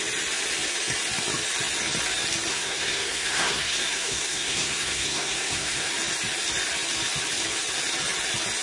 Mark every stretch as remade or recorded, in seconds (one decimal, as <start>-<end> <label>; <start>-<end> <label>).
0.0-2.5 recorded; 2.5-5.9 remade; 5.9-8.6 recorded